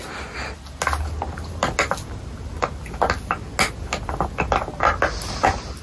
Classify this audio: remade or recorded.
recorded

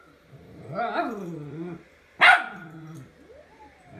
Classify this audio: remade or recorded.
recorded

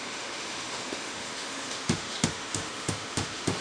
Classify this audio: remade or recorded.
remade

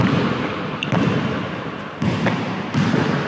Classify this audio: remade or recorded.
remade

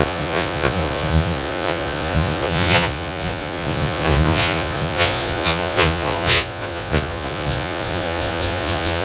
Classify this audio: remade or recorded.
remade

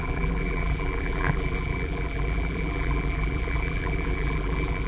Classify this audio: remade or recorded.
remade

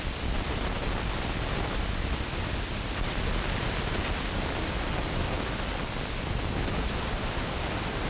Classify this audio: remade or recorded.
recorded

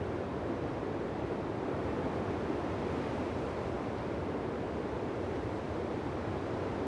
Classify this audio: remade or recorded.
remade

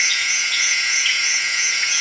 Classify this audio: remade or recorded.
remade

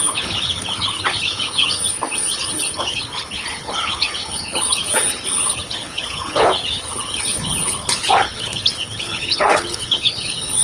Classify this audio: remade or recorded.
remade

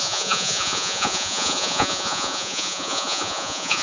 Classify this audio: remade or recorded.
remade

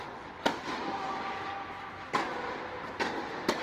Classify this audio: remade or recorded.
recorded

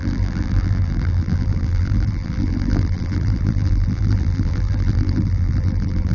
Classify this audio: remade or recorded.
remade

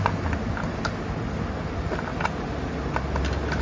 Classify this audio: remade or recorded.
recorded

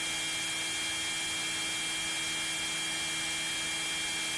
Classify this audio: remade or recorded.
recorded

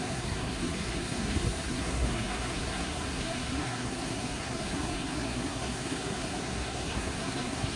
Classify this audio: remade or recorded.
remade